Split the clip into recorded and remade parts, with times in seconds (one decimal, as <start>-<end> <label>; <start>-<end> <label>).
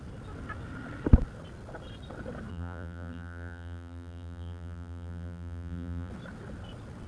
0.0-2.5 recorded; 2.5-6.1 remade; 6.1-7.1 recorded